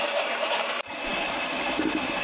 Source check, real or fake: fake